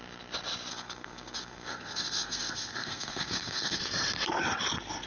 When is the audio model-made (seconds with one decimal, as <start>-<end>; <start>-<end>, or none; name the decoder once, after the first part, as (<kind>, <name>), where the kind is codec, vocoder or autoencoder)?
0.7-3.8 (codec, SNAC)